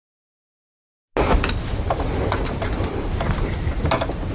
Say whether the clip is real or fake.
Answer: real